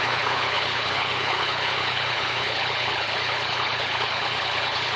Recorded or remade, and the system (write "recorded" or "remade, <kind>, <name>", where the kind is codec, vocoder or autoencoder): remade, codec, HILCodec